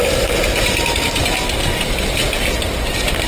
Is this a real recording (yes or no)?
yes